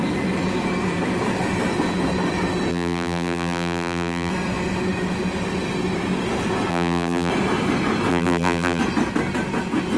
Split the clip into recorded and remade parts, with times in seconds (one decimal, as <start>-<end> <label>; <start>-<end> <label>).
0.0-2.7 recorded; 2.7-4.3 remade; 4.3-6.7 recorded; 6.7-7.3 remade; 7.3-8.1 recorded; 8.1-8.8 remade; 8.8-10.0 recorded